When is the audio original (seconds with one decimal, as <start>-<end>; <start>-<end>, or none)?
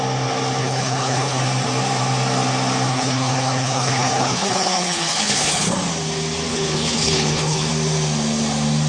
0.0-0.6; 1.4-2.9; 5.7-6.5; 7.7-8.9